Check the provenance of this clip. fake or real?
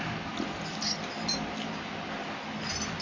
real